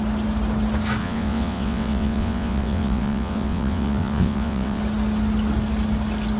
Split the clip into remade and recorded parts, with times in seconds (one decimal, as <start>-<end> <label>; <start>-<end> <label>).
0.0-1.0 recorded; 1.0-4.8 remade; 4.8-6.4 recorded